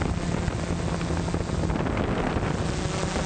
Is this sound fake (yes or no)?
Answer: no